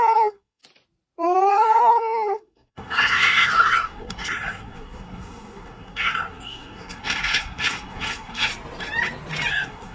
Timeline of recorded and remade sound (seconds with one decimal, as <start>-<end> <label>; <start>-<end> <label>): 0.0-0.6 remade; 0.6-1.5 recorded; 1.5-8.5 remade; 8.5-9.5 recorded; 9.5-9.9 remade